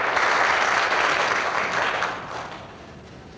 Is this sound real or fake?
real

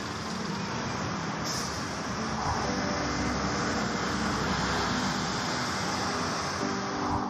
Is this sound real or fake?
real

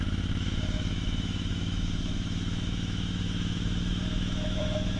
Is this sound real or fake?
fake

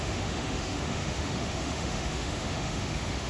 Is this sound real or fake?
fake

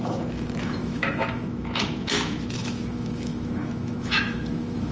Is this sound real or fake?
fake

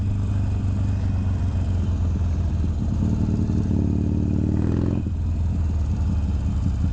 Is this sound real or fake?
real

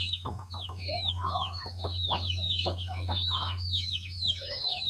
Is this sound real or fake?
fake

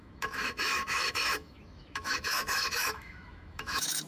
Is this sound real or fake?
fake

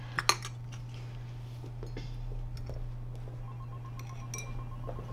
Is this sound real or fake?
real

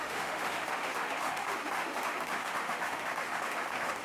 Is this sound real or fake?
fake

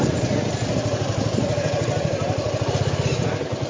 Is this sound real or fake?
real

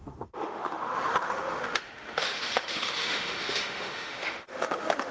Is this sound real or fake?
fake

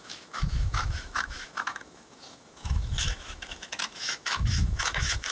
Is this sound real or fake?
fake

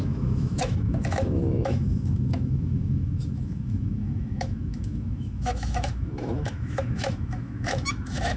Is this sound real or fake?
fake